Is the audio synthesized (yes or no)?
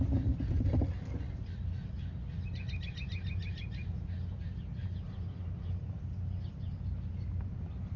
no